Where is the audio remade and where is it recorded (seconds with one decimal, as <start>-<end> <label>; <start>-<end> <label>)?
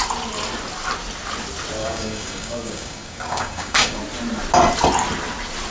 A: 0.0-1.8 recorded; 1.8-4.0 remade; 4.0-5.7 recorded